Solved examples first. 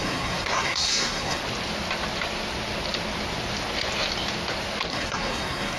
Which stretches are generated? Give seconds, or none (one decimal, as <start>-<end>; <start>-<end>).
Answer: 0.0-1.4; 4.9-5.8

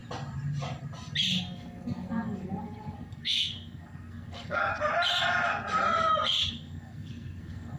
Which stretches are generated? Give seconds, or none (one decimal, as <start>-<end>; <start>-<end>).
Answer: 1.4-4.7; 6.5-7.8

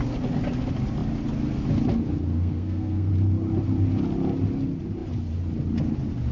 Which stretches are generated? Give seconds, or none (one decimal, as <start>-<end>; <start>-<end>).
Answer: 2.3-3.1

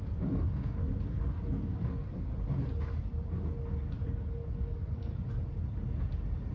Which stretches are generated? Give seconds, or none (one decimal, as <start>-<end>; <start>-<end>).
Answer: 0.0-2.3; 4.5-5.1

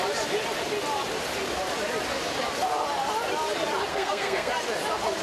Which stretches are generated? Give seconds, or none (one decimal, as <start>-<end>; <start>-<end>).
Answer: 3.9-4.5